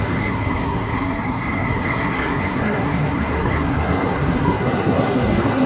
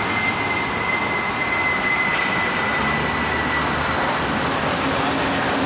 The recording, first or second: second